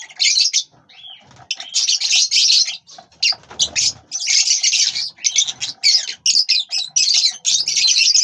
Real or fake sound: real